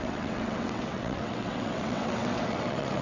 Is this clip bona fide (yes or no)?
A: no